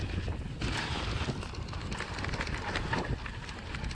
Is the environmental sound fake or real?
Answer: real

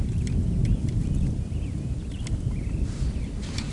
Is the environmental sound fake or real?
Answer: fake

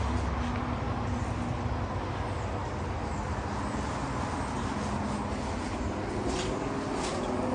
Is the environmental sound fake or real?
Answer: real